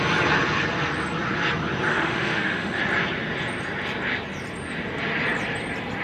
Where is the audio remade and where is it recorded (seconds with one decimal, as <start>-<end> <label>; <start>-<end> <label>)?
0.0-1.9 recorded; 1.9-2.8 remade; 2.8-6.0 recorded